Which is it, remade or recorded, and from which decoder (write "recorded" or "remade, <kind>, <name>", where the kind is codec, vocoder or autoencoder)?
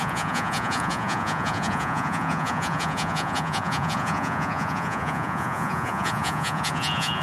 remade, vocoder, Vocos